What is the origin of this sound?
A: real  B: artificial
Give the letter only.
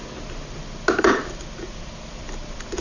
A